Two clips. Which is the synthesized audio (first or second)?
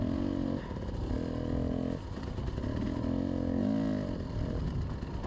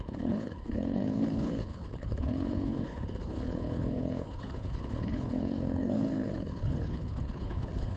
second